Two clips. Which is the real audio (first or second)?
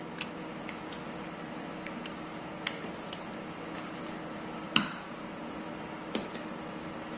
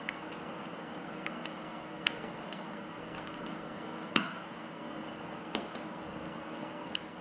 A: first